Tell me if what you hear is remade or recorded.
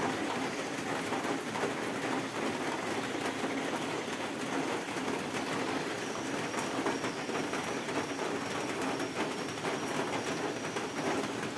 recorded